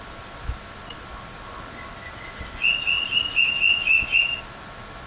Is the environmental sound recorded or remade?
recorded